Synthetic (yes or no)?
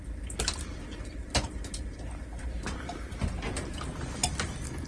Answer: no